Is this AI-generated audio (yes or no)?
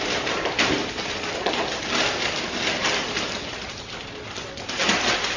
no